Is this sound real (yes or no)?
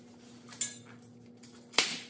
yes